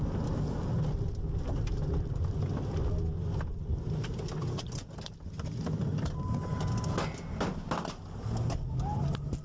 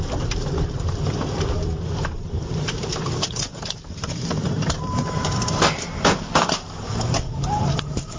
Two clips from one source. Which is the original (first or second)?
first